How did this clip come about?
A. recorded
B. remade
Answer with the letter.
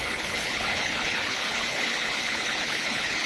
B